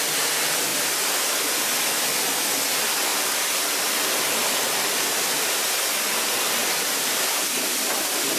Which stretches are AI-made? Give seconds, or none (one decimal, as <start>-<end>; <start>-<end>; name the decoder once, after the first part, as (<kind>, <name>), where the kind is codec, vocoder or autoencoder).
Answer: 0.7-1.5 (vocoder, BigVGAN v2); 3.1-8.4